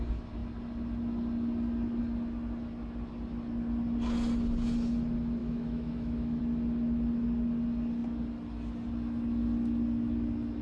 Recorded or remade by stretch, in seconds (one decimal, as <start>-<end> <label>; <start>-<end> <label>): 0.0-5.4 recorded; 5.4-6.4 remade; 6.4-10.6 recorded

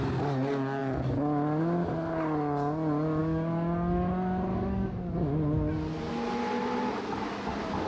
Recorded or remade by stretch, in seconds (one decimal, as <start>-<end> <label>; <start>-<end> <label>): 0.0-3.2 recorded; 3.2-4.1 remade; 4.1-4.5 recorded; 4.5-5.1 remade; 5.1-7.9 recorded

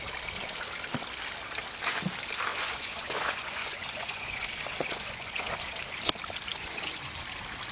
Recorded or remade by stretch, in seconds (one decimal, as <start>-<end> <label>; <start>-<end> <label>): 0.0-2.5 recorded; 2.5-5.6 remade; 5.6-6.5 recorded; 6.5-7.1 remade; 7.1-7.7 recorded

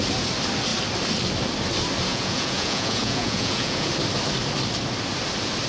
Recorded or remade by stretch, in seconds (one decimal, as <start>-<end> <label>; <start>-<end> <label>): 0.0-2.1 recorded; 2.1-3.9 remade; 3.9-5.7 recorded

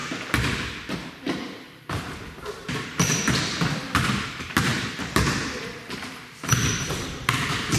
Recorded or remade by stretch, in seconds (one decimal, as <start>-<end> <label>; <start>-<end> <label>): 0.0-1.1 recorded; 1.1-7.8 remade

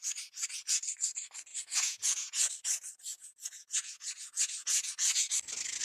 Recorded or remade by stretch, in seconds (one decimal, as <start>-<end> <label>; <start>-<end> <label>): 0.0-0.8 remade; 0.8-1.5 recorded; 1.5-2.5 remade; 2.5-3.1 recorded; 3.1-5.3 remade; 5.3-5.8 recorded